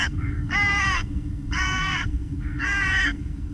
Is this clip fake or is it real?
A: fake